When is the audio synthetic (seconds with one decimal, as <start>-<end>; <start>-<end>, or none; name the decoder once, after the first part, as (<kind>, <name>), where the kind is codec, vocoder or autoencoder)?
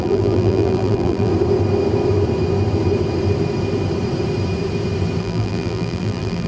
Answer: 0.0-1.3 (vocoder, BigVGAN v2); 5.2-6.5